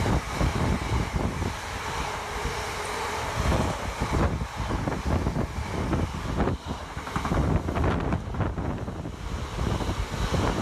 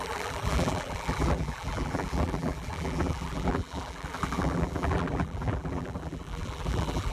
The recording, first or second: first